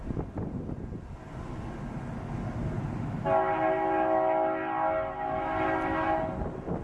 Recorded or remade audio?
recorded